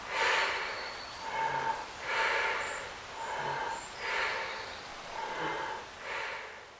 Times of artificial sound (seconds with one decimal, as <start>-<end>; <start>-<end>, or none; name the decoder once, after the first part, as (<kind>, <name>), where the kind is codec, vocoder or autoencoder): 4.9-5.4 (vocoder, Vocos)